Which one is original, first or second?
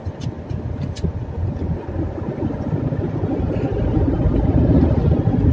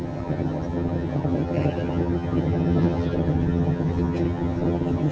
first